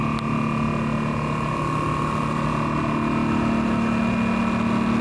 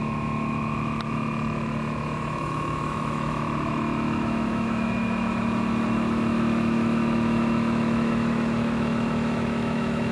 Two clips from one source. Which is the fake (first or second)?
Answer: second